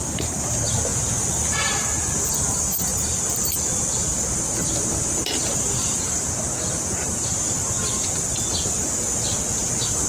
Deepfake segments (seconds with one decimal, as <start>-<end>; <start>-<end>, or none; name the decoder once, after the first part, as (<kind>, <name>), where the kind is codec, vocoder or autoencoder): none